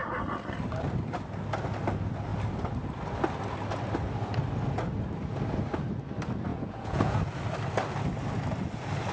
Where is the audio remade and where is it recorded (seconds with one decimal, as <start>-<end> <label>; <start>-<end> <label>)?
0.0-6.5 recorded; 6.5-7.2 remade; 7.2-9.1 recorded